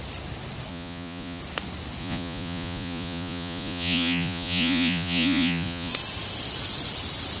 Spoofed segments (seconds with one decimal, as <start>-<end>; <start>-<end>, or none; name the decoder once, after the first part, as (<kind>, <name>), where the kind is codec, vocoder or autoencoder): 0.7-1.4 (vocoder, Vocos); 2.0-5.9